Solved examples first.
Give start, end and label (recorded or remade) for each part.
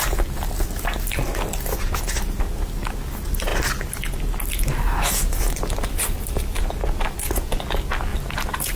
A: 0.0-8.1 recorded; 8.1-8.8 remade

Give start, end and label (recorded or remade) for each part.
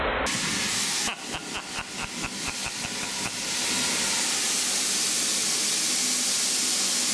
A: 0.0-7.1 recorded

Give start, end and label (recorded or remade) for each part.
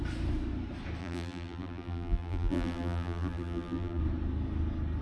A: 0.0-1.0 recorded; 1.0-4.0 remade; 4.0-5.0 recorded